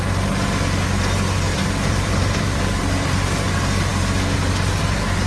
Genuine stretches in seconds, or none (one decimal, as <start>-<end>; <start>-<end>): 0.0-1.5; 3.5-5.3